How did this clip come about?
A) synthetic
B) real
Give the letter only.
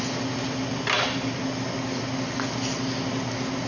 B